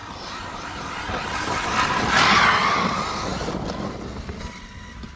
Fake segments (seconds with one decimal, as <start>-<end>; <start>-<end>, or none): none